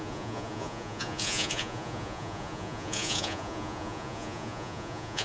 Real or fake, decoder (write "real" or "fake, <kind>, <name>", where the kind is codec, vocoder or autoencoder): fake, vocoder, Vocos